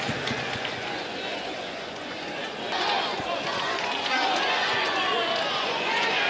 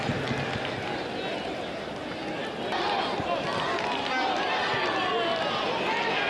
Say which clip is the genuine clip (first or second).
second